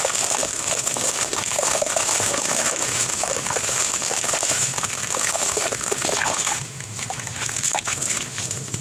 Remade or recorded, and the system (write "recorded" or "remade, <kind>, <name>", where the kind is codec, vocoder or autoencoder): remade, autoencoder, DAC-VAE